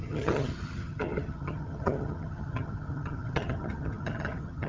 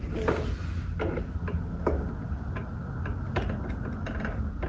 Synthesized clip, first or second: first